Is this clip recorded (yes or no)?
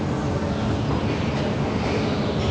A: yes